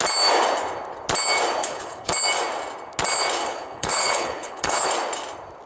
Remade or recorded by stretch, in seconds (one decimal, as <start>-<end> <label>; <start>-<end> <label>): 0.0-1.6 recorded; 1.6-2.1 remade; 2.1-3.4 recorded; 3.4-4.9 remade; 4.9-5.7 recorded